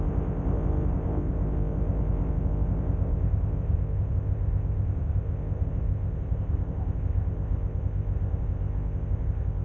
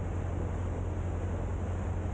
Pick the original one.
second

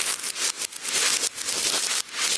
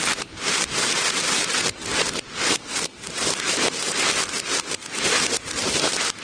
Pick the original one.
first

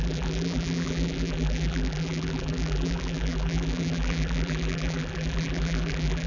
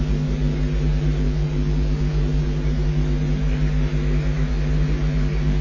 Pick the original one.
second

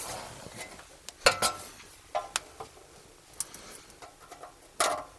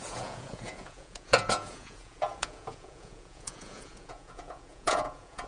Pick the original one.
first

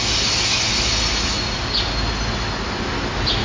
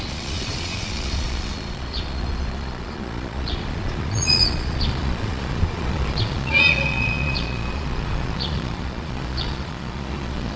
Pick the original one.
first